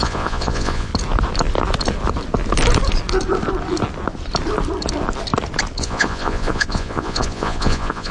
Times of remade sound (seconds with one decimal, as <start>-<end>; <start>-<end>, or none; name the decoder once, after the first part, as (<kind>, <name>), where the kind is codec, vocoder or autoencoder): 0.0-0.9 (vocoder, Vocos); 5.8-8.1